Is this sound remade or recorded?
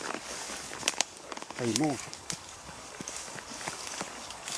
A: remade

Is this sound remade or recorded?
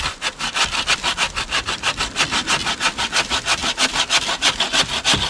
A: recorded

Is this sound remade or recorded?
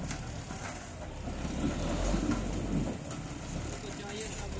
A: recorded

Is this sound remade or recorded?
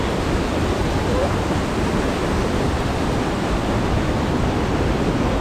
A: remade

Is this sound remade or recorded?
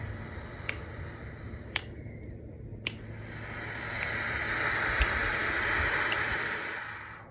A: recorded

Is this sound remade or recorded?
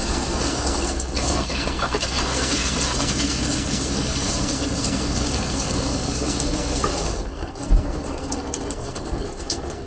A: remade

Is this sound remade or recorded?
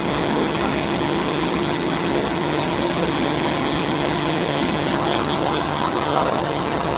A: remade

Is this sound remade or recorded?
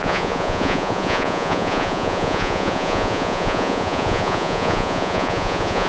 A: remade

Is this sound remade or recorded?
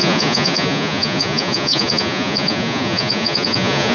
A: remade